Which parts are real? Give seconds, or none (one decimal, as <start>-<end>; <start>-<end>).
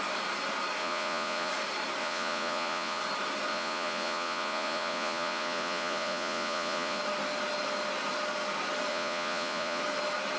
0.0-0.8; 1.5-2.0; 3.0-3.5; 7.0-8.9; 9.8-10.4